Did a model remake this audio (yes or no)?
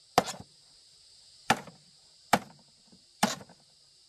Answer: no